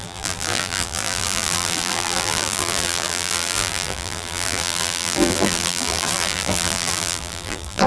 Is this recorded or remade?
remade